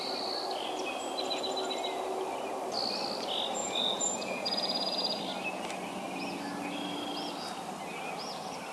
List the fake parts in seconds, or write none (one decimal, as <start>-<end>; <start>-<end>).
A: 3.6-5.2